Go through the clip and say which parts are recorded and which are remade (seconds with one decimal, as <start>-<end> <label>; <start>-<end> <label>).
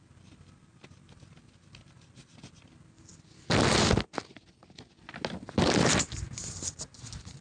0.0-7.4 recorded